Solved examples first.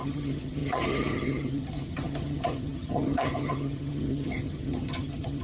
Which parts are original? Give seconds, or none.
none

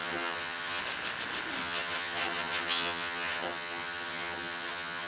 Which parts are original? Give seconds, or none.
0.8-1.6

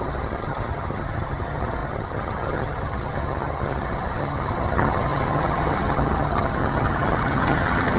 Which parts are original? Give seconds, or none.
none

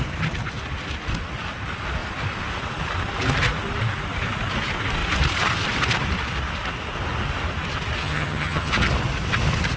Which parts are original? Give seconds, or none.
0.0-8.0; 8.7-9.8